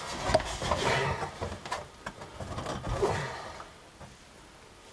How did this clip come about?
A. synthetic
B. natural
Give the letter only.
B